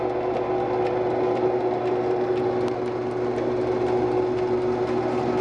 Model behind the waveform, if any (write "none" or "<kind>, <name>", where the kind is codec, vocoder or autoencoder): none